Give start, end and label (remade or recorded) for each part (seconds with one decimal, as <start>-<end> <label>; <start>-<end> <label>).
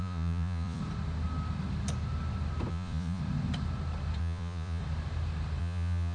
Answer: 0.0-0.8 remade; 0.8-2.7 recorded; 2.7-3.2 remade; 3.2-4.2 recorded; 4.2-4.8 remade; 4.8-5.6 recorded; 5.6-6.1 remade